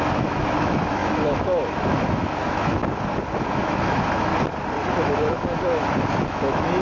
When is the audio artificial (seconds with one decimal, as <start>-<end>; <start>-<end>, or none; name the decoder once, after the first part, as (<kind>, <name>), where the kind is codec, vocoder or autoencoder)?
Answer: 0.0-2.8 (autoencoder, DAC-VAE); 3.5-4.3; 4.9-6.8